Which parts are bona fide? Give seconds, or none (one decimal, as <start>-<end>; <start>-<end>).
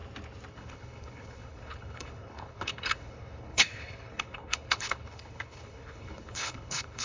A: 0.0-0.5